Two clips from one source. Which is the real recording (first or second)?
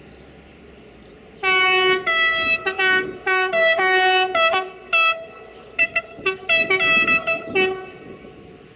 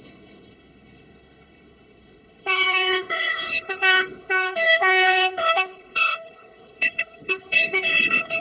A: first